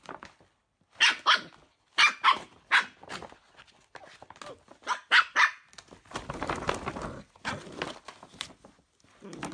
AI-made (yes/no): no